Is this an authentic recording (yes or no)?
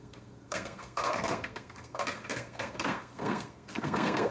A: no